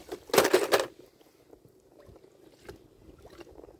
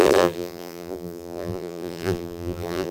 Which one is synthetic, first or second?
second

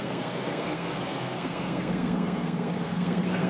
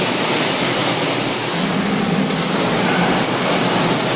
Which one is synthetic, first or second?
first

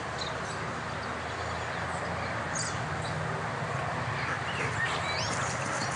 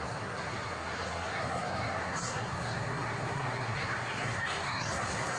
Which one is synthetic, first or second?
second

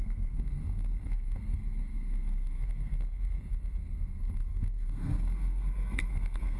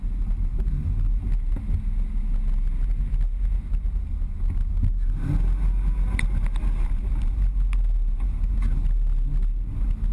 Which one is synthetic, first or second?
first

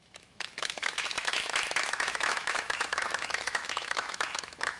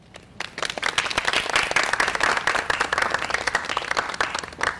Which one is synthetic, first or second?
first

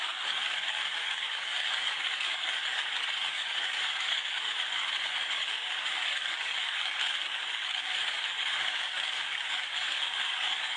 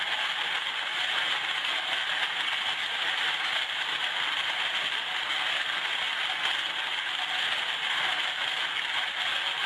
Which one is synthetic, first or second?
first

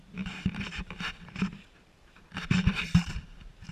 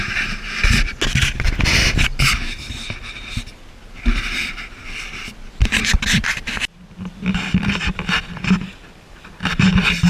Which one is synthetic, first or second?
first